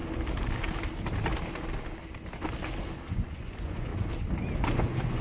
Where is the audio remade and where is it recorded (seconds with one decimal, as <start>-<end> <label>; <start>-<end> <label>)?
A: 0.0-3.1 recorded; 3.1-3.9 remade; 3.9-4.6 recorded; 4.6-5.2 remade